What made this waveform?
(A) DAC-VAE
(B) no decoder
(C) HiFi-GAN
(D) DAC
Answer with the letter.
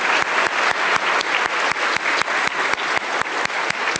B